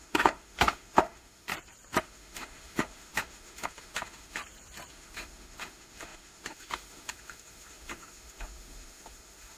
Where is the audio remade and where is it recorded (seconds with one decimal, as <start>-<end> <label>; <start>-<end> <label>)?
0.0-1.5 remade; 1.5-2.0 recorded; 2.0-4.4 remade; 4.4-4.9 recorded; 4.9-9.6 remade